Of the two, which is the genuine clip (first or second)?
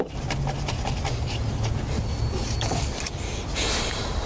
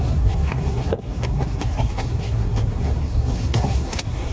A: first